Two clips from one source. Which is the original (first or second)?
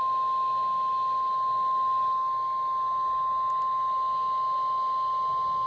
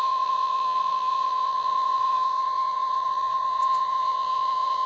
first